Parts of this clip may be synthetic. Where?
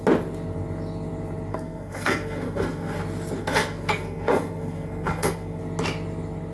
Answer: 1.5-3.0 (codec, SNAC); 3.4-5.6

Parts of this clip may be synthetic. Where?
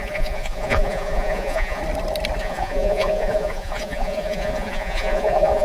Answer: 0.0-1.8 (vocoder, Vocos); 2.4-5.6